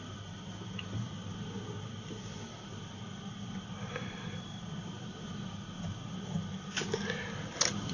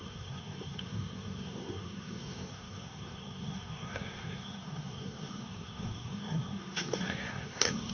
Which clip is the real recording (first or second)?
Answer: first